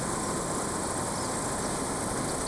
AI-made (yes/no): no